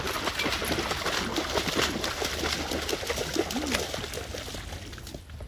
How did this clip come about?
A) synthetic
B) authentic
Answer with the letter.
B